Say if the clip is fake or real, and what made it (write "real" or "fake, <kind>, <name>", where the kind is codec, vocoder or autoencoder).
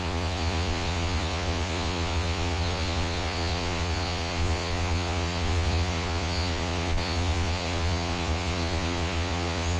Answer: fake, vocoder, Vocos